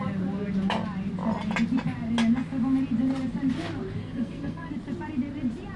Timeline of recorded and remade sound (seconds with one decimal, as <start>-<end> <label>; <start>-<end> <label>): 0.0-4.0 recorded; 4.0-4.7 remade; 4.7-5.8 recorded